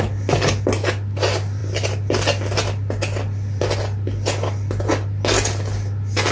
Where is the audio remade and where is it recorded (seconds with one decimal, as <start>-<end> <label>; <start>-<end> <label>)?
0.0-6.3 recorded